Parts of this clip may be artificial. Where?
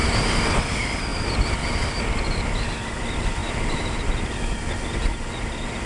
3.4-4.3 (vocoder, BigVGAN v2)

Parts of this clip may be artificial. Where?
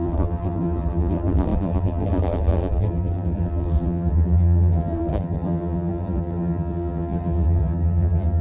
0.0-8.4 (vocoder, BigVGAN v2)